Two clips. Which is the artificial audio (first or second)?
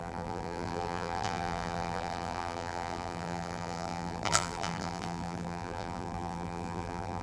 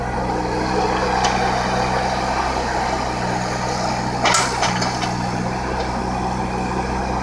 first